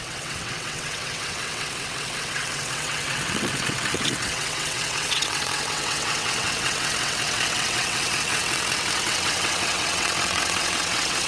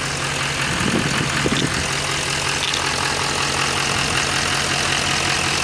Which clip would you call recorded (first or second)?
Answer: second